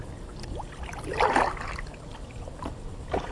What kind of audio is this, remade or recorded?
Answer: recorded